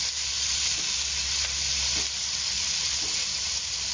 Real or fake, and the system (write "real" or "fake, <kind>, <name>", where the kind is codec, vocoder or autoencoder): real